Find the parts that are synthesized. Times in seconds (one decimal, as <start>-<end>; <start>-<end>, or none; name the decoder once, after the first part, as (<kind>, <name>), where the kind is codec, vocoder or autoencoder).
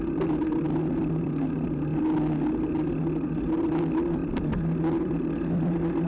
0.0-1.9 (vocoder, BigVGAN v2); 3.0-4.2; 4.8-6.1